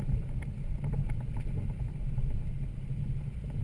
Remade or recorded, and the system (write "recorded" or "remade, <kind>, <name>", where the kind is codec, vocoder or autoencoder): recorded